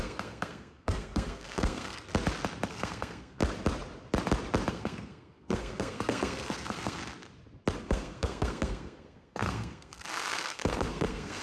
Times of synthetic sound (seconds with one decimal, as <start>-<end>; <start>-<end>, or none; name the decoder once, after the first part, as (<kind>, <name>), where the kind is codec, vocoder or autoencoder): 0.0-2.1 (codec, SNAC); 2.7-3.4; 4.7-7.0; 7.8-11.4